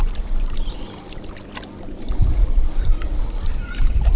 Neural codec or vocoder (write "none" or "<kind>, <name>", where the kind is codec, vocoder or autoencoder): vocoder, BigVGAN v2